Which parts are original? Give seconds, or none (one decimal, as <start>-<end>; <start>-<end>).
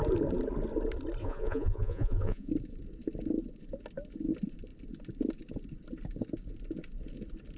0.0-1.2; 2.5-7.6